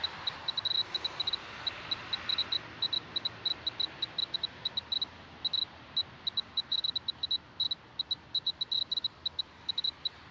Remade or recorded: recorded